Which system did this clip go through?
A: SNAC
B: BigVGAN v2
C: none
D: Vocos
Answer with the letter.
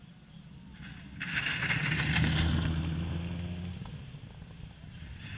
C